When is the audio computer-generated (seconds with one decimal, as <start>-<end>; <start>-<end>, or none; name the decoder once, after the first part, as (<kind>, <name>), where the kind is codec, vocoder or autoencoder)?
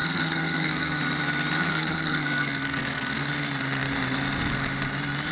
0.0-1.0 (codec, SNAC); 1.7-3.3